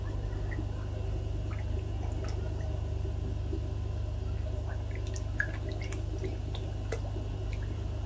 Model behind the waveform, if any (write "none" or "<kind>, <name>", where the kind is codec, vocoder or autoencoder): none